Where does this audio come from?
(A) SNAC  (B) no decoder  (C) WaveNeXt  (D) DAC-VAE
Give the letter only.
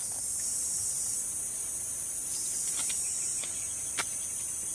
B